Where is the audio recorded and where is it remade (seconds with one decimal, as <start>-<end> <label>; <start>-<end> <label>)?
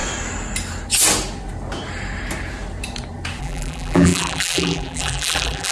0.0-3.4 recorded; 3.4-5.7 remade